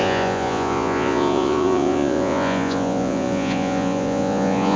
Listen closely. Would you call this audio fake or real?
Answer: fake